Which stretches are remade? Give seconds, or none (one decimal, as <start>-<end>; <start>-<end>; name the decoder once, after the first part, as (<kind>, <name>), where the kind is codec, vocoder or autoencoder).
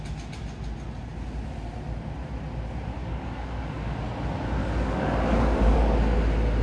3.0-4.0 (codec, DAC); 4.6-6.0